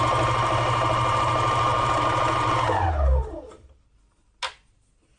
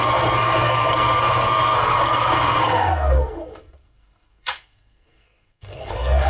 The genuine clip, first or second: first